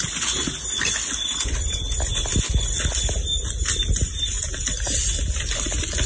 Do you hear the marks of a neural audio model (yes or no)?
no